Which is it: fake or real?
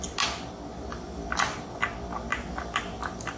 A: real